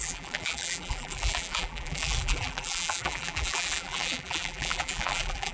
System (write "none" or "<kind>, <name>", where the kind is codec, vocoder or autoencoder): vocoder, BigVGAN v2